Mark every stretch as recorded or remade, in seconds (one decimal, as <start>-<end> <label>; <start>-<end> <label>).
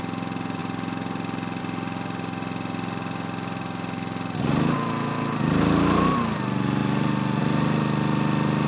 0.0-8.7 recorded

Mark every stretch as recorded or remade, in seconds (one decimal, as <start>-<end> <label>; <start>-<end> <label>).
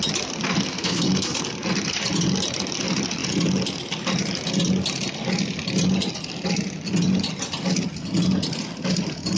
0.0-0.7 recorded; 0.7-1.4 remade; 1.4-9.4 recorded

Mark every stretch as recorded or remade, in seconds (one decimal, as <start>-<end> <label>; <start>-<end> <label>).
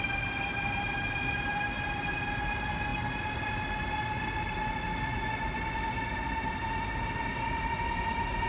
0.0-8.5 recorded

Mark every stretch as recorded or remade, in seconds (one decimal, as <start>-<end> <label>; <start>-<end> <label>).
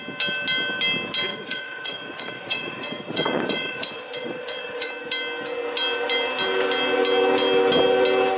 0.0-1.3 recorded; 1.3-4.9 remade; 4.9-8.4 recorded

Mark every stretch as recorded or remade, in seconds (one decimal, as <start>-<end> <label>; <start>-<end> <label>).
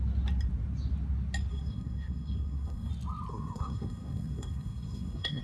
0.0-1.5 recorded; 1.5-2.9 remade; 2.9-3.3 recorded; 3.3-5.4 remade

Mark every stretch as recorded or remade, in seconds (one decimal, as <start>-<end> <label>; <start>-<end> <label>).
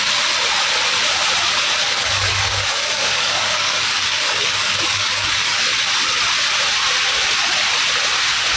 0.0-1.8 recorded; 1.8-5.6 remade; 5.6-8.6 recorded